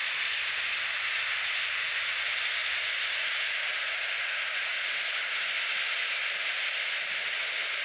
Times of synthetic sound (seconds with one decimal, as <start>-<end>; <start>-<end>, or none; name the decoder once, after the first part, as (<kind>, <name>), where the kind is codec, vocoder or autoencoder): none